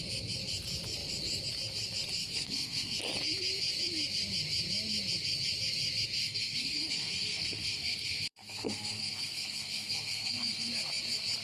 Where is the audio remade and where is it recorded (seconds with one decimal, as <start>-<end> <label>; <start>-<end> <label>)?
0.0-2.2 recorded; 2.2-3.0 remade; 3.0-6.2 recorded; 6.2-10.7 remade; 10.7-11.4 recorded